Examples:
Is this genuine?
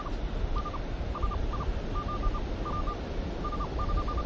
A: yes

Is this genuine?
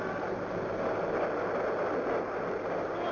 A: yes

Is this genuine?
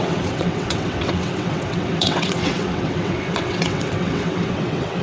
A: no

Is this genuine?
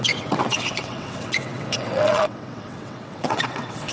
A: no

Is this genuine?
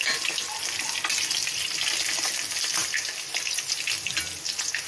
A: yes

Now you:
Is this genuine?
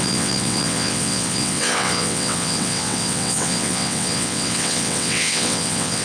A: no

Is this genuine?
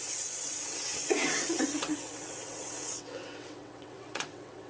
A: no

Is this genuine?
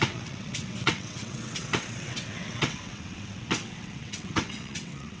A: no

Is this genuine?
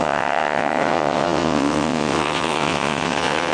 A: no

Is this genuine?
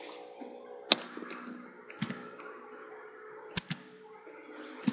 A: yes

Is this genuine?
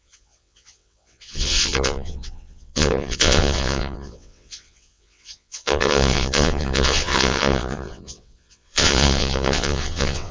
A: no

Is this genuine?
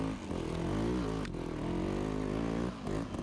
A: yes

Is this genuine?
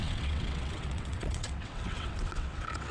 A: no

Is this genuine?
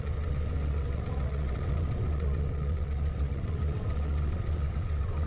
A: no